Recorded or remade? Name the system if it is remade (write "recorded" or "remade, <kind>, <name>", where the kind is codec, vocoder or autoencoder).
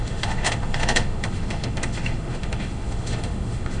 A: remade, autoencoder, DAC-VAE